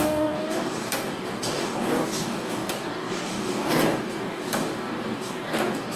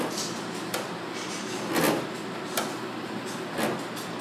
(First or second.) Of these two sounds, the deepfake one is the first